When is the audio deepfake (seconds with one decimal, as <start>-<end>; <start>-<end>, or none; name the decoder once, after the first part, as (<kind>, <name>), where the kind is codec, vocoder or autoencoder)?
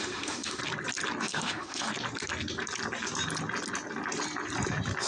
0.0-0.6 (autoencoder, DAC-VAE); 1.2-1.9